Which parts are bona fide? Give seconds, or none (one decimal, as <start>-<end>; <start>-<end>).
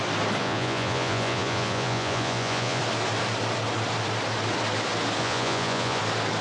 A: 0.0-0.4; 2.8-5.2; 6.0-6.4